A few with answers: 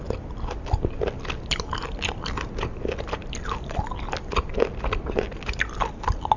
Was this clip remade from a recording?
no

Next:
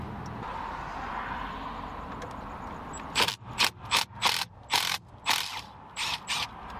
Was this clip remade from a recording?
no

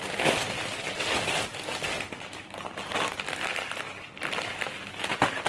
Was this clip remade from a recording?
no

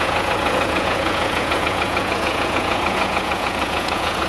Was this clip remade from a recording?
yes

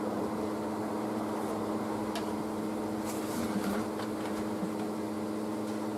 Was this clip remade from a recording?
no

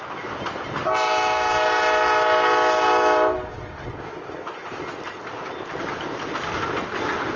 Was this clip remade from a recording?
no